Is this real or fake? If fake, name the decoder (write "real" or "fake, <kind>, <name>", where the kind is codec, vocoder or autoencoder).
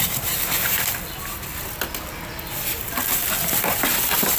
real